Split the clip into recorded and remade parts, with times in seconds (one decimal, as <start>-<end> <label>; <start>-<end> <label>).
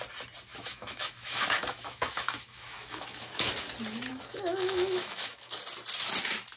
0.0-0.5 recorded; 0.5-3.5 remade; 3.5-4.1 recorded; 4.1-5.6 remade; 5.6-6.6 recorded